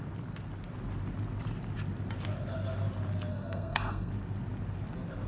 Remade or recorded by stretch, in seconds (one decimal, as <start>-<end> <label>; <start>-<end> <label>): 0.0-3.3 recorded; 3.3-4.1 remade; 4.1-5.3 recorded